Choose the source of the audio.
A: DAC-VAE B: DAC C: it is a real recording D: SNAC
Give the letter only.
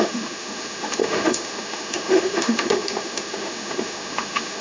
A